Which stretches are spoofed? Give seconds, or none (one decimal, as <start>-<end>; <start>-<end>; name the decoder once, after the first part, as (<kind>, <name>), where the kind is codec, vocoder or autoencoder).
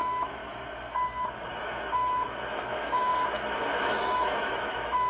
0.0-0.4 (autoencoder, DAC-VAE); 1.6-3.1; 3.9-5.1